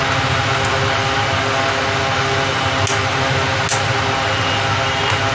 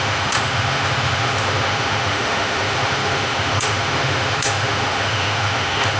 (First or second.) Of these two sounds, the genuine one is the first